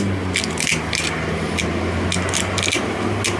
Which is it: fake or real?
real